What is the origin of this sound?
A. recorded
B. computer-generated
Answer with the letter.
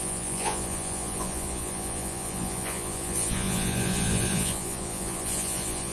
B